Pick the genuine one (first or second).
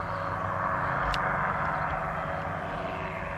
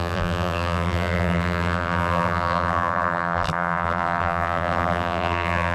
first